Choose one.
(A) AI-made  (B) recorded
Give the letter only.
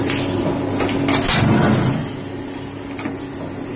B